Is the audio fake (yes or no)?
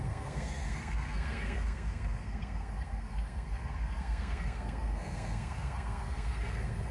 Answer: yes